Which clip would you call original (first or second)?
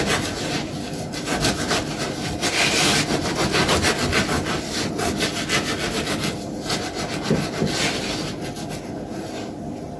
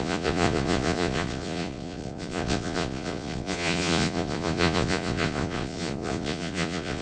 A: first